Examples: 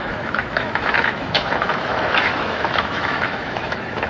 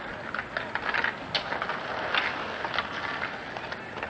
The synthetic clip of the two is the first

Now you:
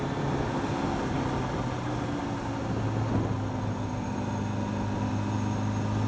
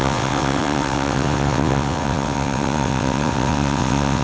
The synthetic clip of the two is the second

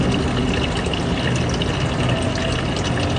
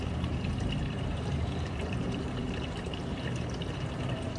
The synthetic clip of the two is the second